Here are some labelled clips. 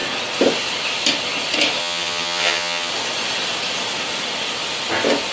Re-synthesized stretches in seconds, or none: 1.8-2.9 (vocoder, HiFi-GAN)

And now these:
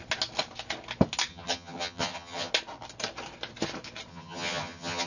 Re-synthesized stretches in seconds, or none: 1.3-2.5 (vocoder, HiFi-GAN); 4.1-5.1

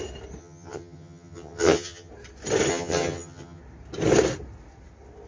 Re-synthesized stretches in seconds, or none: 0.4-2.1 (vocoder, HiFi-GAN); 2.7-3.6

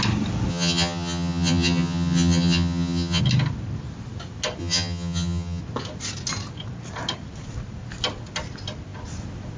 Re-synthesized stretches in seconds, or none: 0.5-3.2 (vocoder, HiFi-GAN); 4.6-5.6

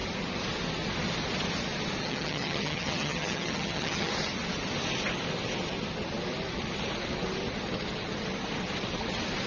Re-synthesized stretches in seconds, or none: 2.0-4.1 (vocoder, HiFi-GAN)